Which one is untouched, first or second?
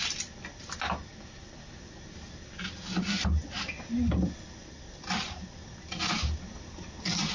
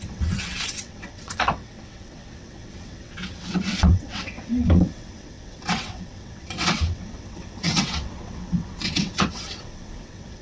first